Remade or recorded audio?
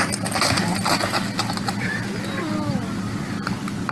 recorded